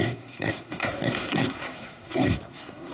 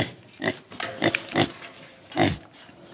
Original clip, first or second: second